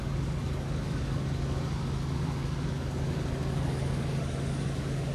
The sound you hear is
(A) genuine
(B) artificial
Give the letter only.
B